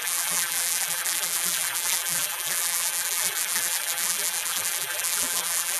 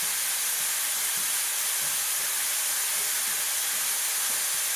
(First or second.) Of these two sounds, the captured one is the second